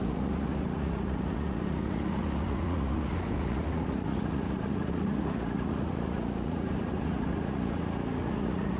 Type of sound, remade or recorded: remade